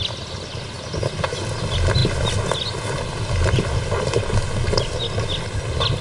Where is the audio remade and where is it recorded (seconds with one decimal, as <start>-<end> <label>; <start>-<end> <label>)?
0.0-6.0 recorded